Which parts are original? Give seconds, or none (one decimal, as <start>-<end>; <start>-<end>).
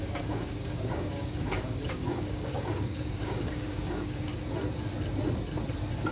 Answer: 4.3-6.1